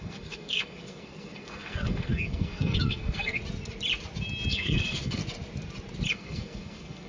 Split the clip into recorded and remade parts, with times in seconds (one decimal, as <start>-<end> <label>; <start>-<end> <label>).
0.0-3.4 remade; 3.4-4.5 recorded; 4.5-5.2 remade; 5.2-6.1 recorded; 6.1-7.1 remade